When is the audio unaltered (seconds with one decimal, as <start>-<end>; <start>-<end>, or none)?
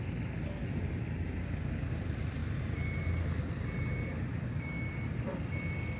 0.0-1.4; 2.0-4.3; 4.9-6.0